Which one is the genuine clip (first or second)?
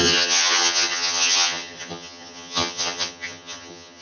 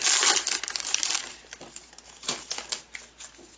second